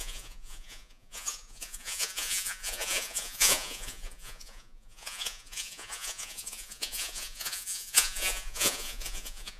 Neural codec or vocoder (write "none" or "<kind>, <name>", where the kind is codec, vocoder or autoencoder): vocoder, Vocos